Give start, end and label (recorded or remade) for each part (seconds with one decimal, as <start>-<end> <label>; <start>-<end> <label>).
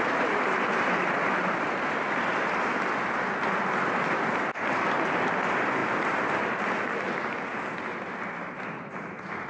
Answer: 0.0-9.5 recorded